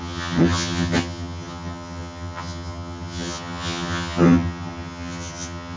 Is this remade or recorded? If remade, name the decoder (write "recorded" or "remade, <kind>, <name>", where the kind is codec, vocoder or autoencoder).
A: remade, vocoder, HiFi-GAN